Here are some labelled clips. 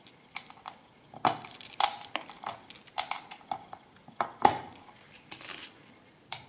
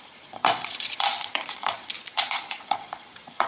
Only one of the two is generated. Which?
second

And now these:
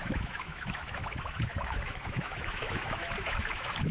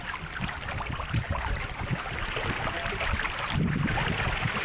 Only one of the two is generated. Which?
first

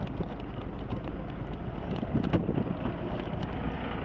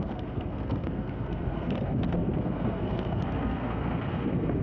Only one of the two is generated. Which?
second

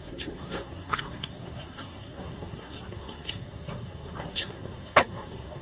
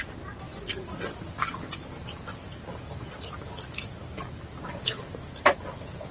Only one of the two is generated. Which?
first